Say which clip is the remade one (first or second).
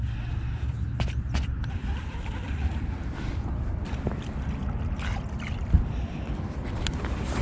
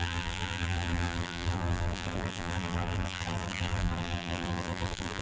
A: second